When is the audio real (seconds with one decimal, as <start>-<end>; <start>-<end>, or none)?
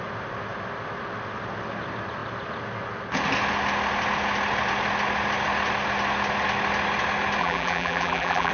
0.0-7.4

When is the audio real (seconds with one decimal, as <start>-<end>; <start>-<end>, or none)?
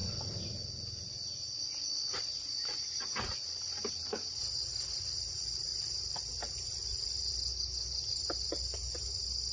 0.0-9.5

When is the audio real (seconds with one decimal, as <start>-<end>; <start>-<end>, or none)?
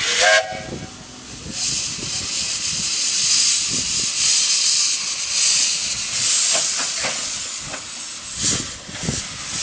0.0-6.6; 7.8-9.6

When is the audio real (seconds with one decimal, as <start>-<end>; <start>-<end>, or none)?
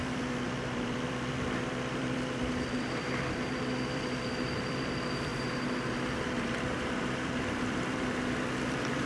5.3-6.1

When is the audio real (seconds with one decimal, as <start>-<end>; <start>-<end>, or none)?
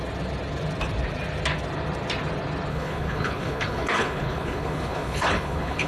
0.0-2.7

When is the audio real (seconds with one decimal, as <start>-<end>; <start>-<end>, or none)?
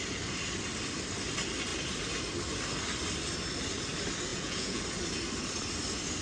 0.0-4.3; 4.8-6.2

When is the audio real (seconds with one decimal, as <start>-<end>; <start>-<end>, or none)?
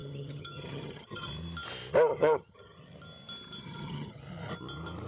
1.3-2.1; 2.8-3.6; 4.2-5.1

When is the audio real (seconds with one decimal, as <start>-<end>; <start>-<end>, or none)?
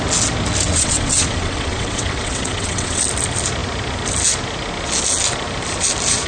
0.0-0.7; 3.0-6.3